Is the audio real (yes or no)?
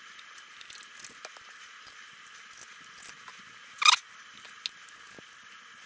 yes